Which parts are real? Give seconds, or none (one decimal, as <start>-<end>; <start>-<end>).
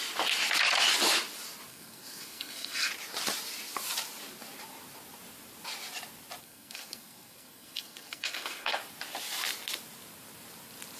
0.0-1.7; 2.9-6.4; 8.8-11.0